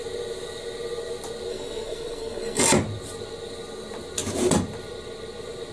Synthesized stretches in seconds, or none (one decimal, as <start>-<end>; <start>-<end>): 1.5-2.6